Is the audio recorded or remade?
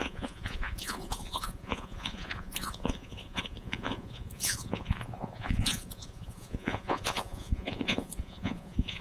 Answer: remade